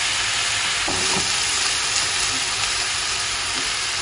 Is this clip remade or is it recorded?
recorded